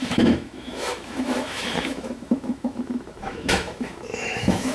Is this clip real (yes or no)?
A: no